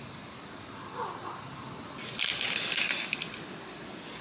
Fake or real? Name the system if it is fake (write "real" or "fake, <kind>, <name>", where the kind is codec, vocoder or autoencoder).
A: real